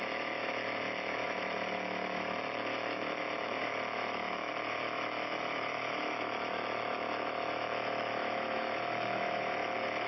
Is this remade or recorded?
remade